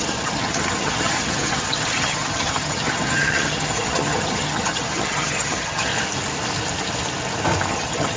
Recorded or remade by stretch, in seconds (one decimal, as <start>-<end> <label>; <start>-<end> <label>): 0.0-5.9 remade; 5.9-7.7 recorded; 7.7-8.2 remade